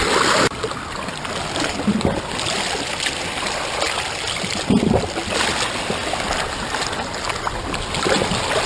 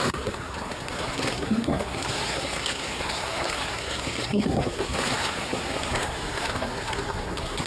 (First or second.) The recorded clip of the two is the first